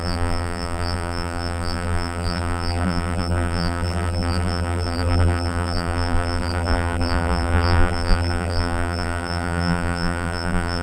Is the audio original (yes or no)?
no